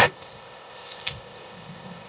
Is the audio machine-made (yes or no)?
yes